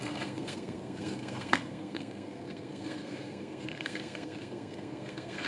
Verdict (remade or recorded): remade